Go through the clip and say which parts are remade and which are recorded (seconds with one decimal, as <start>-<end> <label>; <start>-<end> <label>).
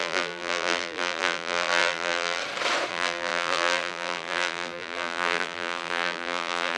0.0-2.4 remade; 2.4-2.9 recorded; 2.9-6.8 remade